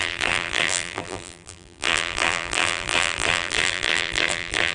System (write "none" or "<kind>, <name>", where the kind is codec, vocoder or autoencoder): vocoder, BigVGAN v2